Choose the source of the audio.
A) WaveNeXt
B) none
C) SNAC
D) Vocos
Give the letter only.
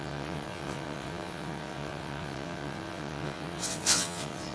A